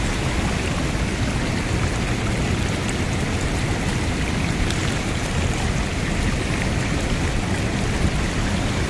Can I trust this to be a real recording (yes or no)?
yes